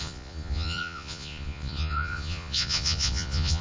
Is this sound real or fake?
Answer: fake